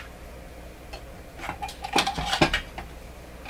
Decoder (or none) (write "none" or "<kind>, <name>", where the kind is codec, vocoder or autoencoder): none